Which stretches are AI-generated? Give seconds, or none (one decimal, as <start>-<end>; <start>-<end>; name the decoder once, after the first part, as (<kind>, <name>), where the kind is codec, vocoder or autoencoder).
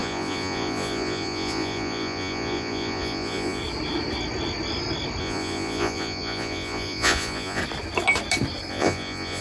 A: 0.0-3.6 (vocoder, Vocos); 5.2-7.6; 8.7-9.4